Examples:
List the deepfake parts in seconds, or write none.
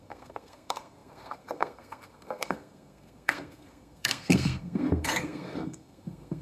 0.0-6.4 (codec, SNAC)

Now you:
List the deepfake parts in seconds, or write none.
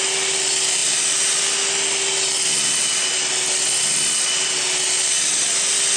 none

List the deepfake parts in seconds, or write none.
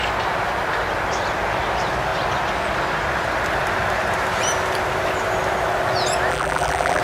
6.3-7.0 (vocoder, BigVGAN v2)